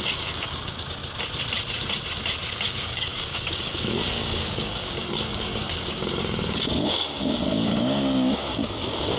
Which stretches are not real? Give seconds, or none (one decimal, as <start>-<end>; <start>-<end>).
0.0-1.0; 2.5-9.2